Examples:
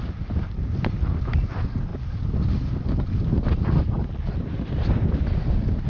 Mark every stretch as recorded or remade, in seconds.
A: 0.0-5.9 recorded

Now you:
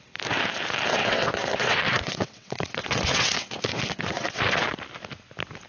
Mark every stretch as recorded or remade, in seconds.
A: 0.0-1.0 recorded; 1.0-4.4 remade; 4.4-5.7 recorded

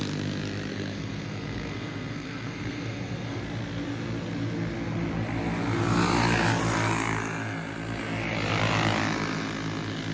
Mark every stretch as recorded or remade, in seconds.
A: 0.0-0.7 recorded; 0.7-3.4 remade; 3.4-10.1 recorded

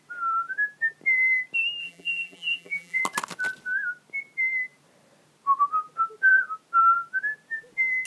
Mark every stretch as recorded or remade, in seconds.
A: 0.0-1.8 recorded; 1.8-3.0 remade; 3.0-8.1 recorded

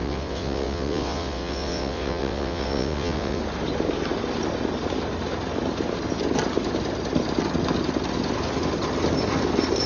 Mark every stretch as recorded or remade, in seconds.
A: 0.0-3.4 remade; 3.4-9.9 recorded

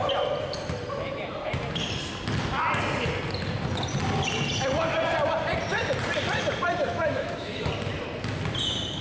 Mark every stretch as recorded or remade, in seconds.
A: 0.0-6.8 recorded; 6.8-7.6 remade; 7.6-9.0 recorded